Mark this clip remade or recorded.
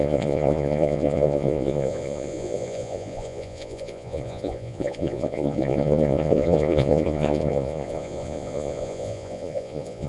remade